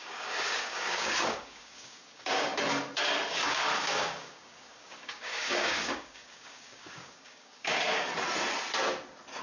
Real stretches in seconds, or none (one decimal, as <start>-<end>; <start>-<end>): 2.5-3.3; 8.1-9.4